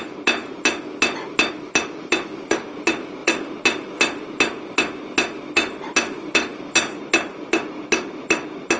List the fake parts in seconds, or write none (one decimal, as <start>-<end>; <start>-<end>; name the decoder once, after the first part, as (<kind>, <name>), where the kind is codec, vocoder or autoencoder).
none